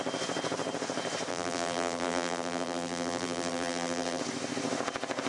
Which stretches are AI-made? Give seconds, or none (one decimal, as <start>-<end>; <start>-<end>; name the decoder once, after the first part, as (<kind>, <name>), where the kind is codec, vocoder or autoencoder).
1.3-4.2 (vocoder, BigVGAN v2)